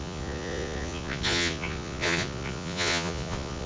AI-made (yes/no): yes